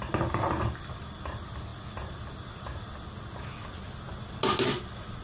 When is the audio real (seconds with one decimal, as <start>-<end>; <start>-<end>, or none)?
1.7-4.8